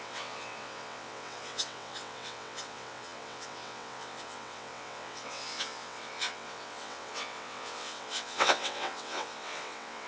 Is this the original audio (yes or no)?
no